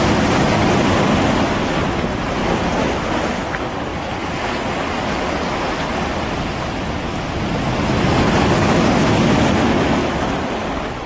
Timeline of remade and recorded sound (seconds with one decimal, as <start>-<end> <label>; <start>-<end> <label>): 0.0-3.9 recorded; 3.9-7.2 remade; 7.2-10.0 recorded; 10.0-10.5 remade; 10.5-11.1 recorded